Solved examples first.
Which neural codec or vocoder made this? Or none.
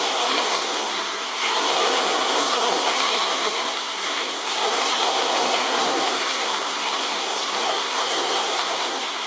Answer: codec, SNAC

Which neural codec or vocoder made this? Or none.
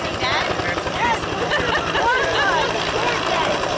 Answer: vocoder, BigVGAN v2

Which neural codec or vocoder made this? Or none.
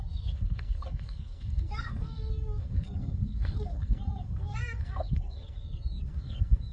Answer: codec, SNAC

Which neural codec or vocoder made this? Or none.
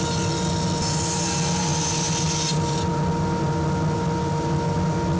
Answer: none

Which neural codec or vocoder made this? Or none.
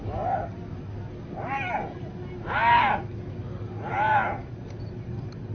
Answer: none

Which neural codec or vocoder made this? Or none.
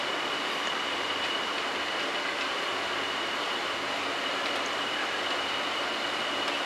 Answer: none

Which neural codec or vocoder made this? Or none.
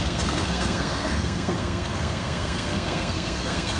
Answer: codec, SNAC